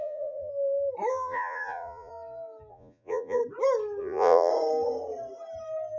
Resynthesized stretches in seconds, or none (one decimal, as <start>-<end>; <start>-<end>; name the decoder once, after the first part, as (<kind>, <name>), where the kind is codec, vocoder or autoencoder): 0.0-0.5 (vocoder, Vocos); 1.1-2.1; 2.7-3.4; 4.0-4.5